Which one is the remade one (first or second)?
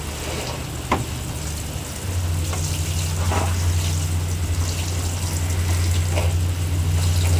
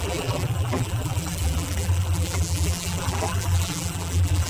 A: second